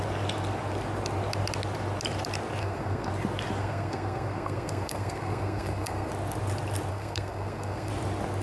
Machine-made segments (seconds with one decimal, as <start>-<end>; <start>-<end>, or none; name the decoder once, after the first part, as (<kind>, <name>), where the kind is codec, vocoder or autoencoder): 2.6-3.1 (codec, SNAC); 3.6-6.1; 6.9-7.9